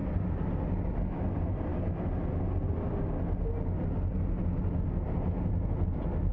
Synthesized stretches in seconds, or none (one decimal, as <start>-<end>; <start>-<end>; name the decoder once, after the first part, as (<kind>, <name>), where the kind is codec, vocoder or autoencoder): none